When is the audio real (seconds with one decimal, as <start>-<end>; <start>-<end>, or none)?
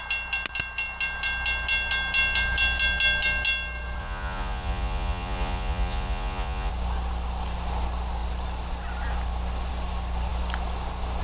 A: 0.0-4.0; 6.7-11.2